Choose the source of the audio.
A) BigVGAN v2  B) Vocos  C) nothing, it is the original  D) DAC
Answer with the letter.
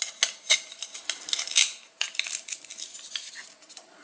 C